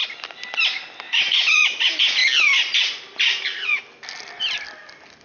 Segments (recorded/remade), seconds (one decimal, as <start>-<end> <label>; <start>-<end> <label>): 0.0-5.2 recorded